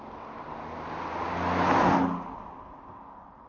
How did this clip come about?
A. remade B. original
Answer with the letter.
B